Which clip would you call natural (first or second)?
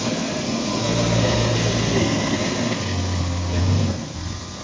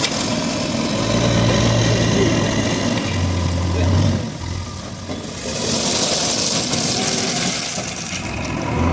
second